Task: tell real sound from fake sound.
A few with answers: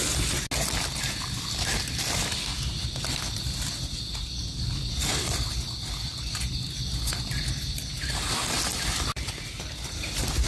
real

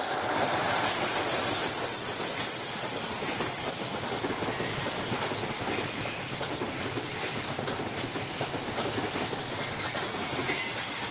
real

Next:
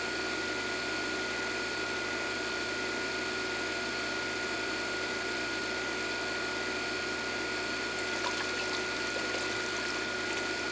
real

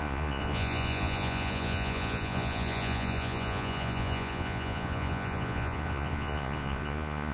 fake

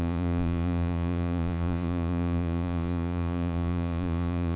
fake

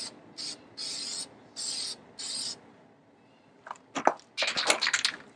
real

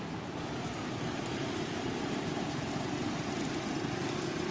real